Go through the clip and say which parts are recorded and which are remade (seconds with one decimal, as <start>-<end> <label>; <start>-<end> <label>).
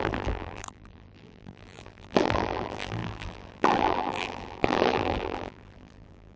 0.0-6.4 remade